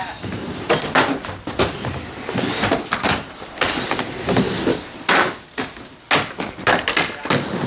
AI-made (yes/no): no